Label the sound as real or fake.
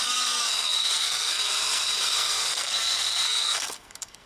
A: fake